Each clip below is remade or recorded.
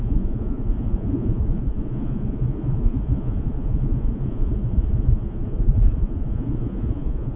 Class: remade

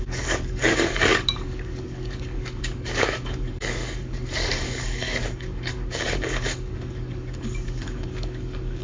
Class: remade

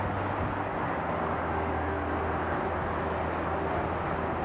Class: recorded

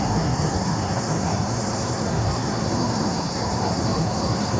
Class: remade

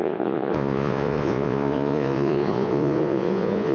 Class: remade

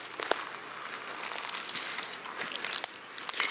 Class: recorded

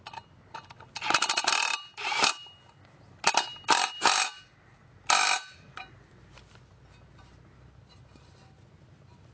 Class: recorded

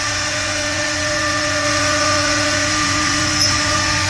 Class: remade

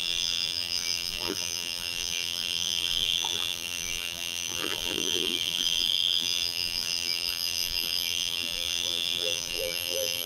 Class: remade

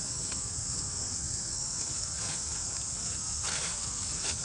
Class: remade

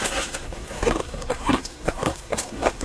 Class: remade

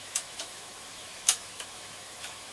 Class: remade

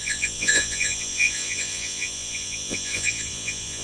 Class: remade